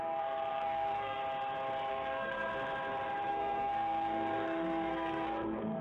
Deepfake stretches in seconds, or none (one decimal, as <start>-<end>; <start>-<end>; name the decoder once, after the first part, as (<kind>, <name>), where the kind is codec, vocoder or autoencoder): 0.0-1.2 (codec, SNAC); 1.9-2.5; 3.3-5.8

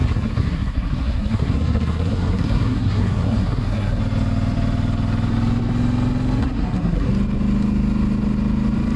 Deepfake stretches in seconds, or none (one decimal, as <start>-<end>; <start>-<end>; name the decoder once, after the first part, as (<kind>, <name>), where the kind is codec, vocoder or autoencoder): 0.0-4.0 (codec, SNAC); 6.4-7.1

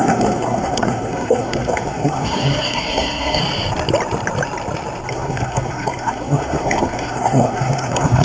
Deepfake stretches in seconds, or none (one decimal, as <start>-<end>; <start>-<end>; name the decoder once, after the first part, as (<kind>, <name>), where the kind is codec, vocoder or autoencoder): 0.0-3.4 (codec, SNAC); 5.1-8.2